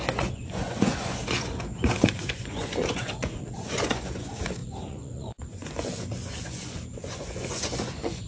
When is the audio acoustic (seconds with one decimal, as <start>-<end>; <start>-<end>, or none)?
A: none